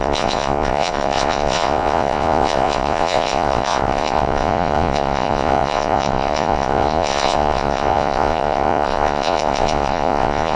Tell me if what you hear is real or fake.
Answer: fake